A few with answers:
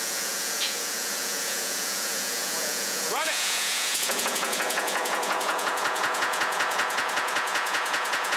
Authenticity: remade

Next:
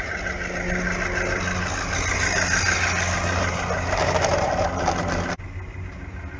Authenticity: recorded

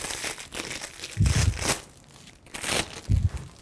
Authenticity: recorded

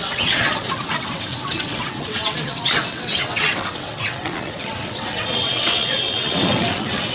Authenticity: remade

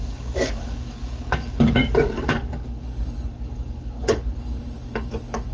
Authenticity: remade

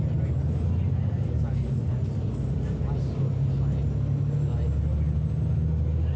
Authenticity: recorded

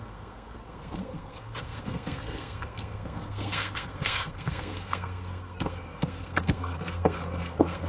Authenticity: remade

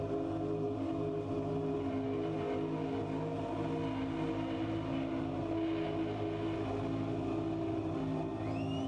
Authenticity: recorded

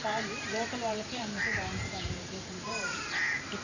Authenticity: remade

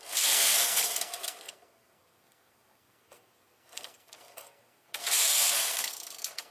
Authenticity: remade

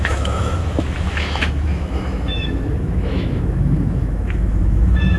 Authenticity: remade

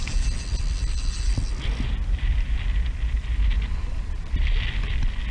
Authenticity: recorded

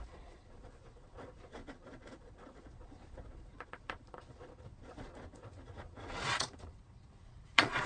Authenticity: remade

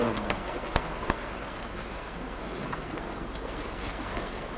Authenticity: remade